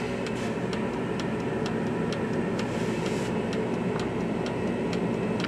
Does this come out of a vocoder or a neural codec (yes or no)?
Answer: no